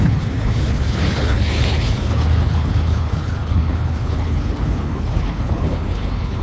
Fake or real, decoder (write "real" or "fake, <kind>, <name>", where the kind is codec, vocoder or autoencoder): fake, codec, HILCodec